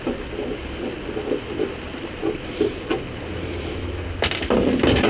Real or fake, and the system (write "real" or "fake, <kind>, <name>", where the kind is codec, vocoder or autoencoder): real